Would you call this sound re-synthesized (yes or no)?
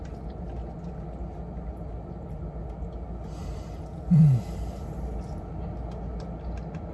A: no